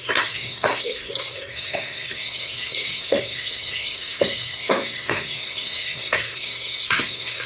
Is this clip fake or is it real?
fake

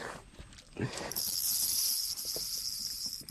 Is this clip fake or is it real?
fake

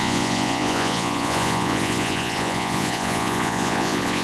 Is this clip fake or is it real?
fake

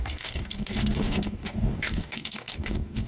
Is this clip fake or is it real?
fake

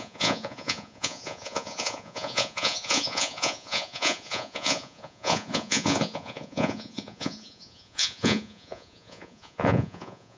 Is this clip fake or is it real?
fake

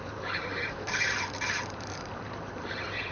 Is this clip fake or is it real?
fake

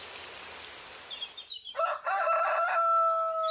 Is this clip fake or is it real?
real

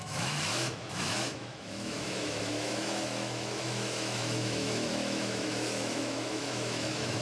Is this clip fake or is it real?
fake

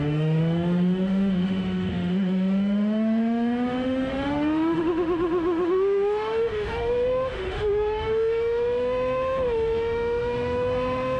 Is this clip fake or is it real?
fake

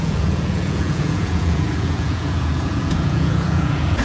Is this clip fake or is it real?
fake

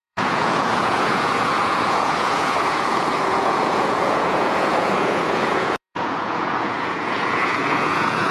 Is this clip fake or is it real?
fake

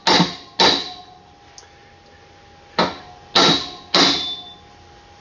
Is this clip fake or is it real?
real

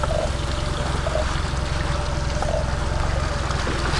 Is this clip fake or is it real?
real